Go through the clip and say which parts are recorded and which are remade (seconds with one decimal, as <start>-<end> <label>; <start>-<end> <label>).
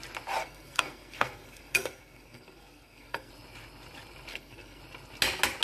0.0-0.4 recorded; 0.4-3.3 remade; 3.3-4.3 recorded; 4.3-4.8 remade; 4.8-5.6 recorded